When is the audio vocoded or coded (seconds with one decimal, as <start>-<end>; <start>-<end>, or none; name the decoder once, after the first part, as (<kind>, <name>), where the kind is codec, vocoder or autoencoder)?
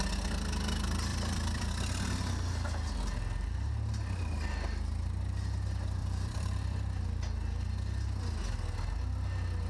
1.1-1.7 (vocoder, BigVGAN v2); 6.0-6.8